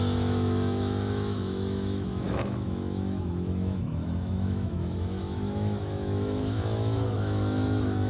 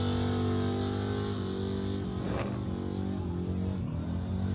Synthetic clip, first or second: first